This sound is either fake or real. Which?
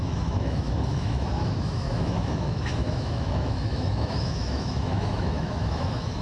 fake